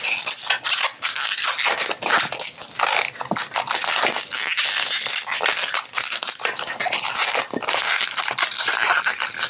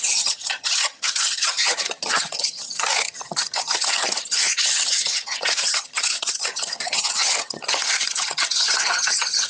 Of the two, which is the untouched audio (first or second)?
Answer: first